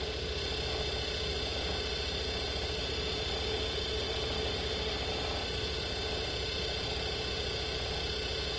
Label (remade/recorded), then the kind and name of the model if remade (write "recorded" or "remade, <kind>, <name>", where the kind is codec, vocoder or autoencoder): recorded